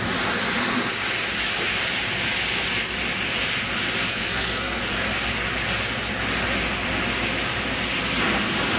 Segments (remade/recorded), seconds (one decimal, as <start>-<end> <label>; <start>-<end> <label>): 0.0-4.1 recorded; 4.1-4.8 remade; 4.8-8.8 recorded